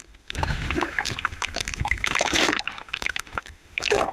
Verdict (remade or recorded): remade